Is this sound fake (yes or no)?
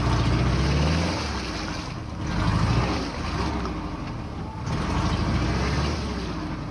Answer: no